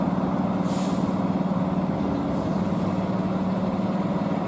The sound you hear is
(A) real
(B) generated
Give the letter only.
A